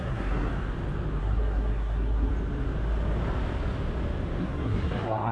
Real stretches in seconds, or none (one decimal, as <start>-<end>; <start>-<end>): 0.5-1.2; 2.3-4.4